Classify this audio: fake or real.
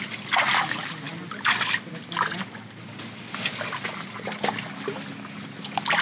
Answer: real